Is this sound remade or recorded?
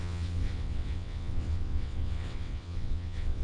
remade